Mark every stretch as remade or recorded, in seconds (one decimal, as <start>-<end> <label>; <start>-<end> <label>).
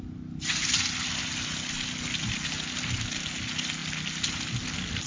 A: 0.0-5.1 recorded